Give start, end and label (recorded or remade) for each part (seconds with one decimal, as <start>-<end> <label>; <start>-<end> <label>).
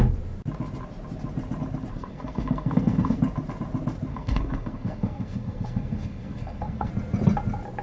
0.0-1.9 recorded; 1.9-3.2 remade; 3.2-4.1 recorded; 4.1-6.9 remade; 6.9-7.8 recorded